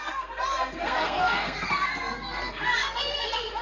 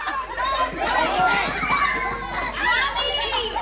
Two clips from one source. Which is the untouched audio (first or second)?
second